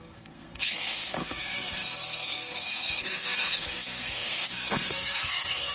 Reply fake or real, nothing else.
fake